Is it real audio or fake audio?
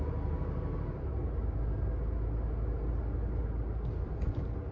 real